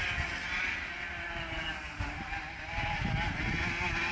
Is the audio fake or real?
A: real